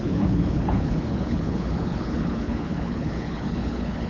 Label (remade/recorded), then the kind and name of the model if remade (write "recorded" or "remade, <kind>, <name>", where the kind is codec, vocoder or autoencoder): remade, codec, HILCodec